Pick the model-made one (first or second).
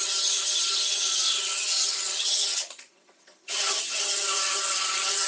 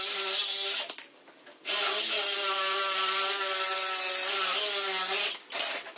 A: first